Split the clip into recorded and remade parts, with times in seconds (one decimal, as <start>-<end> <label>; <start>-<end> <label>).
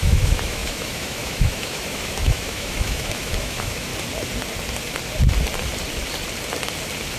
0.0-3.9 remade; 3.9-7.2 recorded